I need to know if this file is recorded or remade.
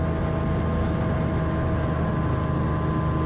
recorded